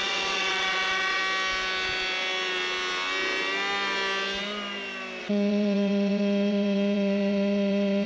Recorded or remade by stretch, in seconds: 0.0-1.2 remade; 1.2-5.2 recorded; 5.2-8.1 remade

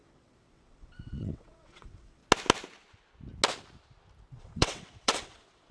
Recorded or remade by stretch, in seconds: 0.0-2.2 remade; 2.2-4.4 recorded; 4.4-5.7 remade

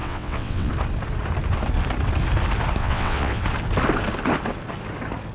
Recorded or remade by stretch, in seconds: 0.0-0.7 remade; 0.7-2.8 recorded; 2.8-3.4 remade; 3.4-5.3 recorded

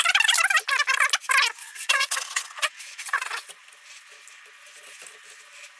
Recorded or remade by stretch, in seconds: 0.0-1.6 recorded; 1.6-3.5 remade; 3.5-5.8 recorded

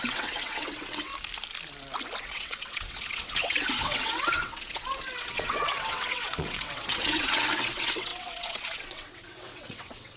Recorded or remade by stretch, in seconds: 0.0-1.1 remade; 1.1-2.2 recorded; 2.2-10.2 remade

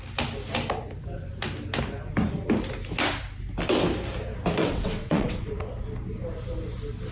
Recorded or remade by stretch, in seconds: 0.0-4.6 recorded; 4.6-5.5 remade; 5.5-7.1 recorded